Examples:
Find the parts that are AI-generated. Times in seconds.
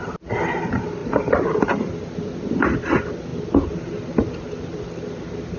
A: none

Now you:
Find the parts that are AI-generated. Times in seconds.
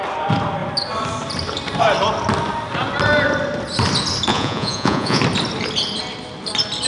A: 4.3-5.2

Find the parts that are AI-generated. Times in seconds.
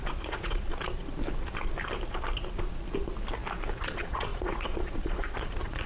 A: 0.0-0.7; 3.8-5.9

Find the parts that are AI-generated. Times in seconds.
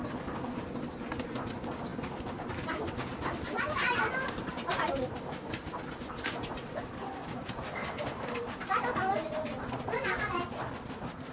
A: none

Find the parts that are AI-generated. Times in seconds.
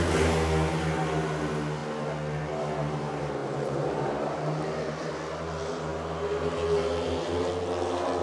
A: 3.4-5.1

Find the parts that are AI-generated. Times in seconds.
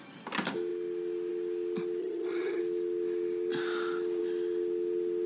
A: 2.0-2.6